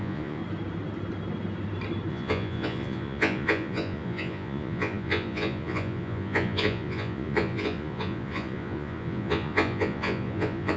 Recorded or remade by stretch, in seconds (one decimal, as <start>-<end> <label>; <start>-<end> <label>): 0.0-0.4 remade; 0.4-2.1 recorded; 2.1-10.8 remade